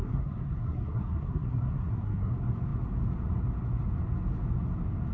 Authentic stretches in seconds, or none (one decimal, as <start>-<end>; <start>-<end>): 2.3-5.1